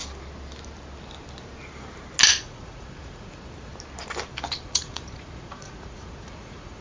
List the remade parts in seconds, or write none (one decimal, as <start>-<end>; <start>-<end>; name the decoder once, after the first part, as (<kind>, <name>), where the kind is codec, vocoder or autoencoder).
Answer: 2.4-3.7 (vocoder, Vocos); 4.6-6.8